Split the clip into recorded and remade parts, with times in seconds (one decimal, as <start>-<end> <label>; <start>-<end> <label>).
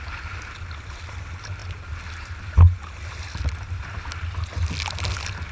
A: 0.0-5.5 recorded